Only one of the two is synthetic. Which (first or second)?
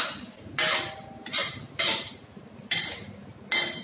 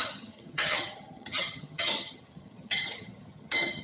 second